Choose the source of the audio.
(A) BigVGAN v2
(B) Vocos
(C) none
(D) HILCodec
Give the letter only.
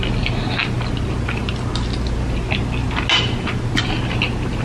C